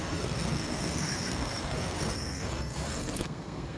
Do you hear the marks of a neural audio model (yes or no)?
yes